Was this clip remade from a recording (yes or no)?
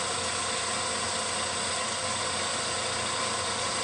no